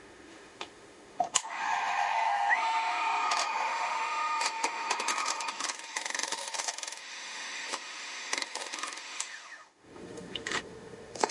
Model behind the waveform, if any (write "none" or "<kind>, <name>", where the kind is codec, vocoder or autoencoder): autoencoder, DAC-VAE